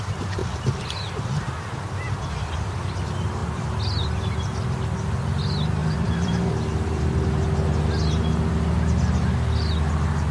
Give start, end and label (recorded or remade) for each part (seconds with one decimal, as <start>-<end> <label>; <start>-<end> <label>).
0.0-5.8 recorded; 5.8-6.5 remade; 6.5-10.3 recorded